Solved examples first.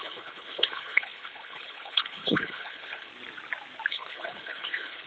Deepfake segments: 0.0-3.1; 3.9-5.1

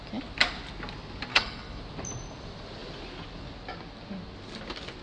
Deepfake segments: 1.3-1.8

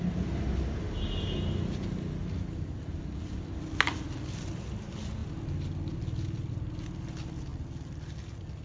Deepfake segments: none

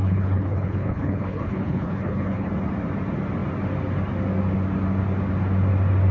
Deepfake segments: 0.0-2.5